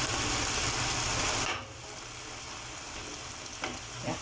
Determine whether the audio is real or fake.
real